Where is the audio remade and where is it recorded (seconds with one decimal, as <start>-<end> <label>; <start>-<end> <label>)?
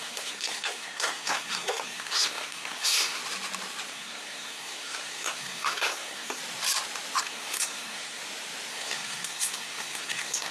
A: 0.0-3.2 remade; 3.2-3.9 recorded; 3.9-6.4 remade; 6.4-7.2 recorded; 7.2-8.2 remade; 8.2-8.7 recorded; 8.7-10.5 remade